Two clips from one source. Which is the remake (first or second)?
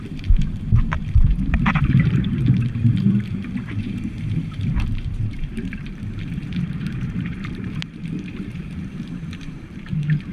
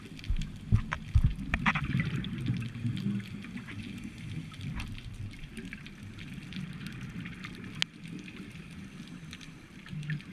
first